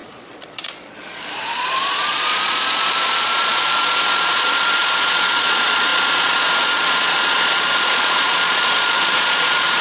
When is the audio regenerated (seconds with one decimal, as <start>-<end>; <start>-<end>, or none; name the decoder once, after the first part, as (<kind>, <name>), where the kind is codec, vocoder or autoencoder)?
0.0-9.8 (vocoder, Vocos)